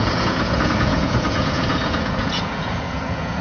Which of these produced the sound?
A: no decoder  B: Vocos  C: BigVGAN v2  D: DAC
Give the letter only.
B